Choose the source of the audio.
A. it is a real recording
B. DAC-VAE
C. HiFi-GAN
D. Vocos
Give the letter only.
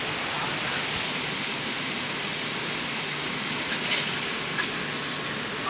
A